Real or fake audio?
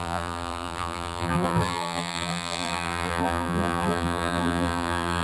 fake